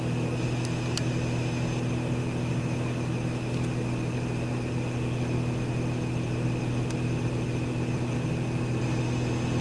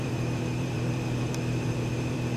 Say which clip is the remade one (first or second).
second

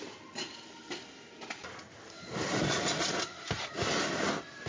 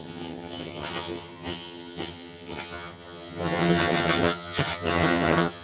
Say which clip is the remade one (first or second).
second